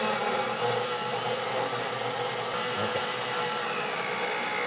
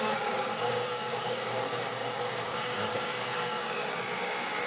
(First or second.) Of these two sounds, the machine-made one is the second